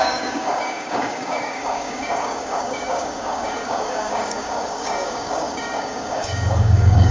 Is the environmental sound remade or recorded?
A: remade